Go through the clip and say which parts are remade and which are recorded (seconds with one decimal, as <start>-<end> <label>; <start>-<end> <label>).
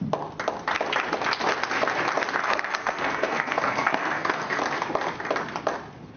0.0-2.4 recorded; 2.4-4.6 remade; 4.6-6.2 recorded